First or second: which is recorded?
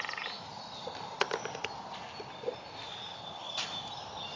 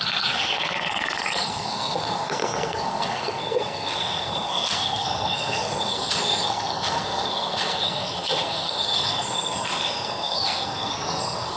first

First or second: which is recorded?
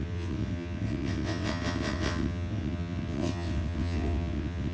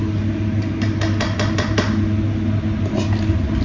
second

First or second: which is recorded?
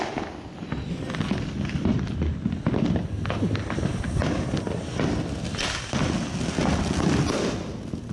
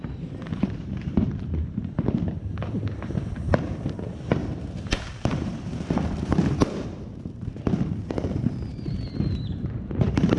first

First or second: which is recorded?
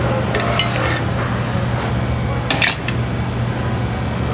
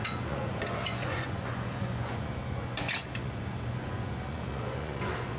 first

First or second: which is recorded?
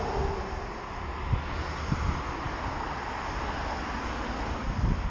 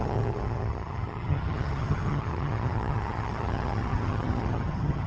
first